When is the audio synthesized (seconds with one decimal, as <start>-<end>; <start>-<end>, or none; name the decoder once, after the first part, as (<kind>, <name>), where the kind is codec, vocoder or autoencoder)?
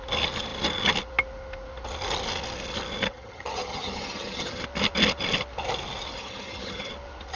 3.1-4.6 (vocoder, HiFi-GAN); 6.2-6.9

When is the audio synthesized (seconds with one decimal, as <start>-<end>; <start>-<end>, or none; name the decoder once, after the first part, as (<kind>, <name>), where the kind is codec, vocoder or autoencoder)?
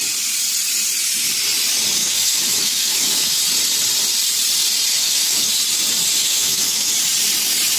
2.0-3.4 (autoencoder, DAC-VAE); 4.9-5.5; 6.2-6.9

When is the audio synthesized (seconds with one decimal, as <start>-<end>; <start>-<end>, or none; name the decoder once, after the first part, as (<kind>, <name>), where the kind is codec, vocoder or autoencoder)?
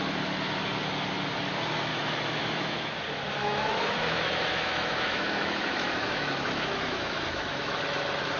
1.9-2.9 (autoencoder, DAC-VAE); 3.4-7.8